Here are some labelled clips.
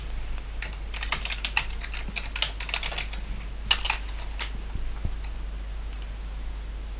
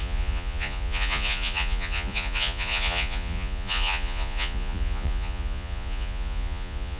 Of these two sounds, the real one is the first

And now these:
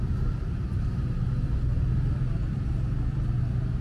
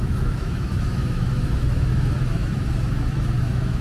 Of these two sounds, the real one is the first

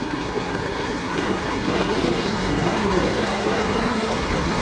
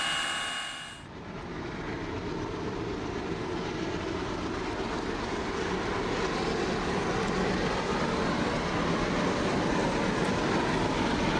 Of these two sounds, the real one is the second